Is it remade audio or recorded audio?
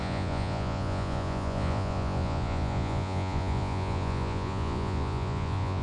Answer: remade